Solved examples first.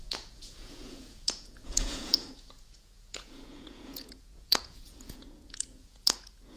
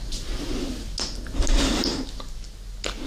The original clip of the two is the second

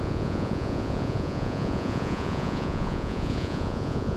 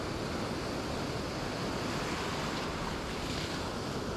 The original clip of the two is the second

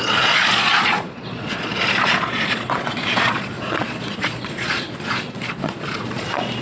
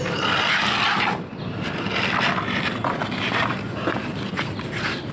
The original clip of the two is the second